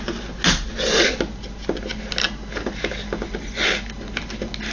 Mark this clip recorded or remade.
recorded